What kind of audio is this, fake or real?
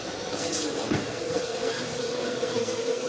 fake